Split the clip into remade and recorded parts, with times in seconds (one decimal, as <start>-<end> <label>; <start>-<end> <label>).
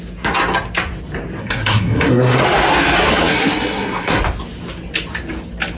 0.0-1.4 recorded; 1.4-2.4 remade; 2.4-3.1 recorded; 3.1-4.2 remade; 4.2-5.8 recorded